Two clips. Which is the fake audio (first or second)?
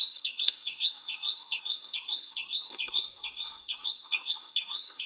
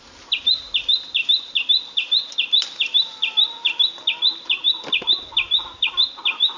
first